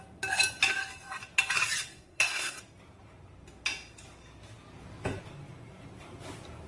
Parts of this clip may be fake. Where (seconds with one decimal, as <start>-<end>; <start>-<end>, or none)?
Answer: 1.9-2.6